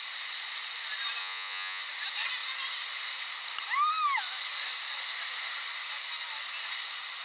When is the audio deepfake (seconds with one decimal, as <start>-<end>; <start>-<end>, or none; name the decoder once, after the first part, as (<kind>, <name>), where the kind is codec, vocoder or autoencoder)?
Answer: 1.2-1.8 (vocoder, Vocos)